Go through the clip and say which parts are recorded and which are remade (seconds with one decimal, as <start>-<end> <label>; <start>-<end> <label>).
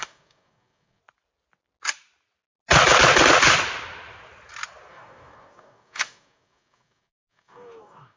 0.0-1.0 remade; 1.0-4.9 recorded; 4.9-8.2 remade